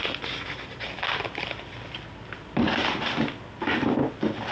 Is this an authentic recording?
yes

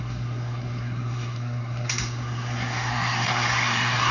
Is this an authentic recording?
no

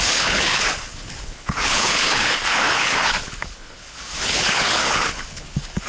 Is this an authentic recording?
no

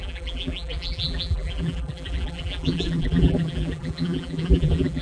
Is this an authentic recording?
no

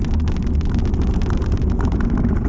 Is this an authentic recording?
yes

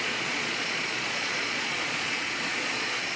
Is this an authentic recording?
no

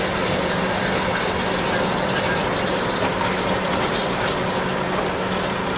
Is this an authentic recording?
yes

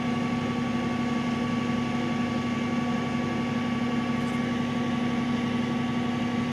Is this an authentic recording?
yes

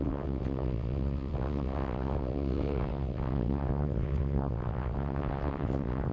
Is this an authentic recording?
no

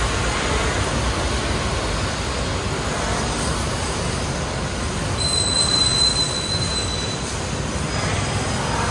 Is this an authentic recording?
yes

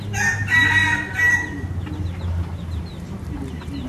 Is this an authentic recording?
yes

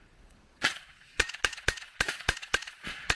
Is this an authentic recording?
no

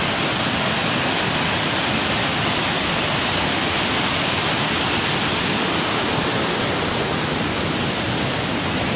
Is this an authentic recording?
yes